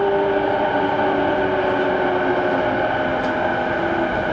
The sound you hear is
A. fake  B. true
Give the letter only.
B